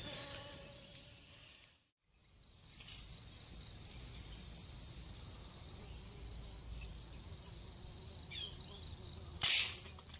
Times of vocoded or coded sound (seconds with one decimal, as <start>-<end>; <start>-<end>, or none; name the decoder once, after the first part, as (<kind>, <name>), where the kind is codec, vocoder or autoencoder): none